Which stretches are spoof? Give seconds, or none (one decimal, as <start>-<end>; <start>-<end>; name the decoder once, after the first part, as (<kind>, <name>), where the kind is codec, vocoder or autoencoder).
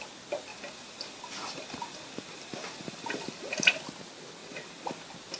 0.5-3.7 (vocoder, BigVGAN v2); 4.4-5.0